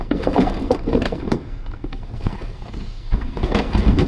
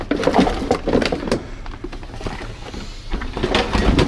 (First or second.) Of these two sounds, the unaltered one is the second